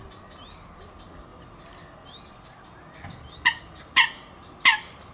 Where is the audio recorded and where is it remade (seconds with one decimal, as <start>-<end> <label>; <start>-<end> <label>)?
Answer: 0.0-5.1 recorded